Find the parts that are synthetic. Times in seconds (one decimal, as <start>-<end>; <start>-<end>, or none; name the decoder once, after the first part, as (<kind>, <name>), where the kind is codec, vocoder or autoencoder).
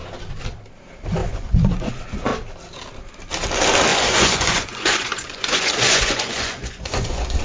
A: 1.2-1.9 (vocoder, Vocos); 3.9-7.4